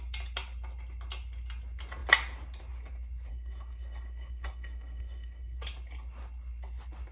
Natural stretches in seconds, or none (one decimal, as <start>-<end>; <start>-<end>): 0.0-3.3; 5.6-7.1